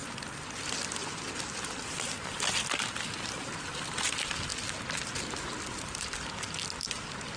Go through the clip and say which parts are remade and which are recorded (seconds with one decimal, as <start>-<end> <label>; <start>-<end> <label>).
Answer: 0.0-7.4 recorded